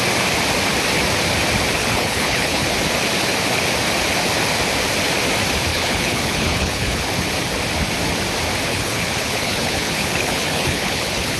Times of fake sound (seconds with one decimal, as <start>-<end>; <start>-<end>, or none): 1.8-2.6; 5.7-7.0; 8.7-11.4